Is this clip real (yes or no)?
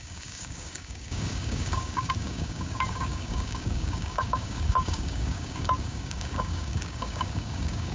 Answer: no